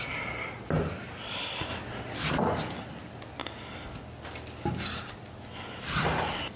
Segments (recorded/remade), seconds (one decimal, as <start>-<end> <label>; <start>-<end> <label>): 0.0-6.6 recorded

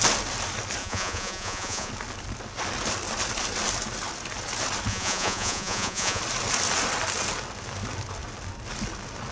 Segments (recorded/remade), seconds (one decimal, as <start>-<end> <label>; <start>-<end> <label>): 0.0-0.8 recorded; 0.8-1.9 remade; 1.9-4.9 recorded; 4.9-6.2 remade; 6.2-9.3 recorded

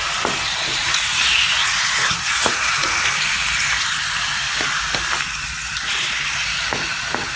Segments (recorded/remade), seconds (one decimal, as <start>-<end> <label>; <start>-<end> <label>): 0.0-0.7 recorded; 0.7-2.9 remade; 2.9-7.4 recorded

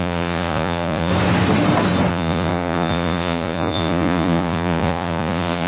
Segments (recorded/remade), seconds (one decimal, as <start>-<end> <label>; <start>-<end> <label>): 0.0-1.1 remade; 1.1-2.1 recorded; 2.1-5.7 remade

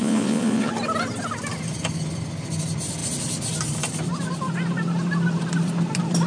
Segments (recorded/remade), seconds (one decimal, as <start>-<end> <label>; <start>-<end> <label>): 0.0-0.7 remade; 0.7-6.3 recorded